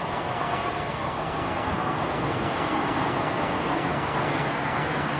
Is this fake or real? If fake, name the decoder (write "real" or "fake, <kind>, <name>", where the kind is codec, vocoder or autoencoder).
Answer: fake, codec, SNAC